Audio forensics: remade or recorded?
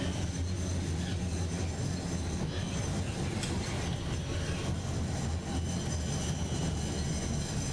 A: recorded